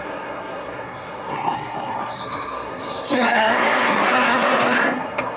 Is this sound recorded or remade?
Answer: remade